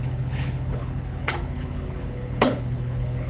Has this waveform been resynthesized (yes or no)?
yes